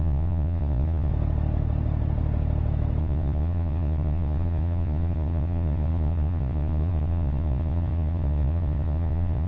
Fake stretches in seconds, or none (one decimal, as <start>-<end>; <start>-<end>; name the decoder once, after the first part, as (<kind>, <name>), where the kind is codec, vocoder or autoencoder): 0.0-1.1 (vocoder, Vocos); 3.0-9.5